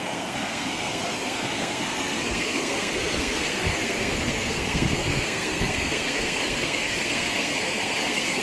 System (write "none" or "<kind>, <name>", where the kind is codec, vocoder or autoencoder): codec, SNAC